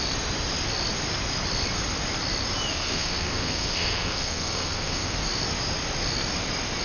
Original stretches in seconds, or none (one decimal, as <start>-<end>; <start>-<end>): 0.0-2.7; 5.2-6.8